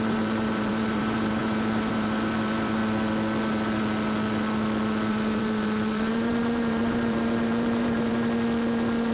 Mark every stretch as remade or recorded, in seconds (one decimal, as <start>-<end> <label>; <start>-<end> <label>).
0.0-2.8 remade; 2.8-5.1 recorded; 5.1-8.1 remade; 8.1-9.1 recorded